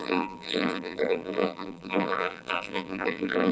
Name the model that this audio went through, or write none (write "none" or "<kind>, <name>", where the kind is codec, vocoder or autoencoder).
vocoder, BigVGAN v2